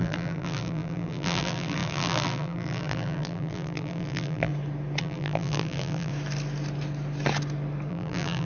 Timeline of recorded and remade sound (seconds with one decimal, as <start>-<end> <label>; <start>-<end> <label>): 0.0-4.5 remade; 4.5-5.0 recorded; 5.0-6.1 remade; 6.1-7.9 recorded; 7.9-8.4 remade